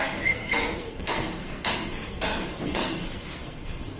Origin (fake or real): fake